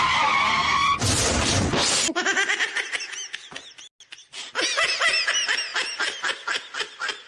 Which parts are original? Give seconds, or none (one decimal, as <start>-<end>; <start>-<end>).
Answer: 0.0-7.3